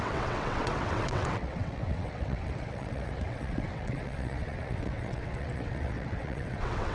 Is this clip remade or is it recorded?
remade